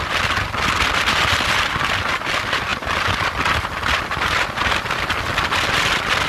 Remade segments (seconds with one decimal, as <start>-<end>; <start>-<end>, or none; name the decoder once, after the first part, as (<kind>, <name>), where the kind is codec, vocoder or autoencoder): none